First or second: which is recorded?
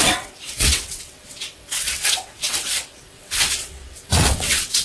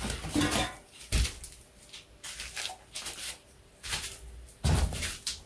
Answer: second